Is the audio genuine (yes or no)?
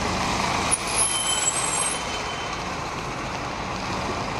yes